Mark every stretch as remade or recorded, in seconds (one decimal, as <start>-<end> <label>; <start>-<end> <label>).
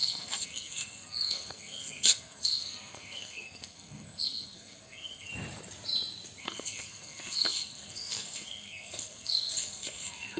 0.0-5.3 remade; 5.3-6.4 recorded; 6.4-10.4 remade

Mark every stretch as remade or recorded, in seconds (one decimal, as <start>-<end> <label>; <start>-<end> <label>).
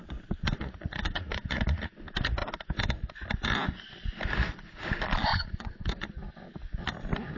0.0-0.6 recorded; 0.6-1.6 remade; 1.6-5.3 recorded; 5.3-6.1 remade; 6.1-7.4 recorded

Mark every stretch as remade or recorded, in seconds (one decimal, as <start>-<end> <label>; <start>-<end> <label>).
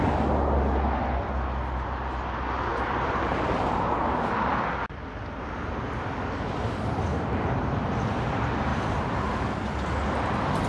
0.0-2.7 recorded; 2.7-3.3 remade; 3.3-7.1 recorded; 7.1-8.0 remade; 8.0-8.7 recorded; 8.7-9.2 remade; 9.2-10.7 recorded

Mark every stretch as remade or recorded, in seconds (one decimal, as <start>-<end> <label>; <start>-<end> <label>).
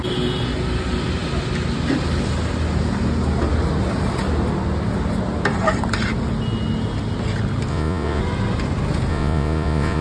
0.0-7.7 recorded; 7.7-8.2 remade; 8.2-9.1 recorded; 9.1-10.0 remade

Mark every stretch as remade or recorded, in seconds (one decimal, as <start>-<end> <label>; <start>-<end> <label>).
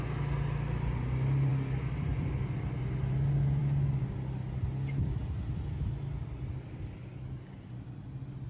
0.0-8.5 recorded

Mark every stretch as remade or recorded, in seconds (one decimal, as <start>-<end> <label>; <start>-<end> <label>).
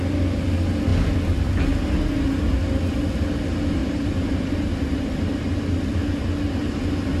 0.0-3.8 recorded; 3.8-4.5 remade; 4.5-7.2 recorded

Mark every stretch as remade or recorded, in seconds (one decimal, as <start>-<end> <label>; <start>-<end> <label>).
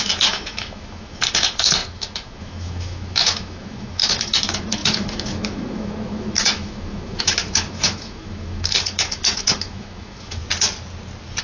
0.0-10.4 remade; 10.4-11.4 recorded